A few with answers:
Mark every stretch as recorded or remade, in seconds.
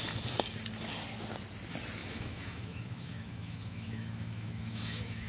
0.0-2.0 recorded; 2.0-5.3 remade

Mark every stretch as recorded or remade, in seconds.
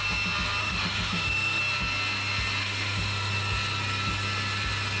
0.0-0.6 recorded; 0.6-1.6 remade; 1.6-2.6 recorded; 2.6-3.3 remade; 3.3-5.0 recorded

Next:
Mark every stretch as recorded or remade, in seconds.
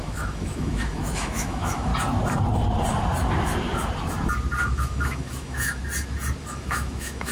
0.0-1.9 remade; 1.9-4.6 recorded; 4.6-5.8 remade; 5.8-6.4 recorded; 6.4-7.3 remade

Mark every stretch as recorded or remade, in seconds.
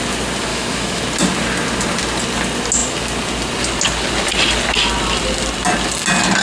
0.0-0.5 recorded; 0.5-1.0 remade; 1.0-6.4 recorded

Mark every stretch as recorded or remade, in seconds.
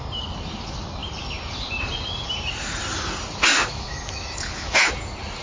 0.0-3.5 recorded; 3.5-4.9 remade; 4.9-5.4 recorded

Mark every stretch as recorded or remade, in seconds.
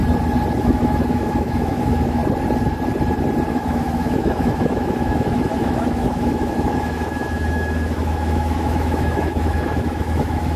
0.0-0.6 recorded; 0.6-2.2 remade; 2.2-3.5 recorded; 3.5-10.6 remade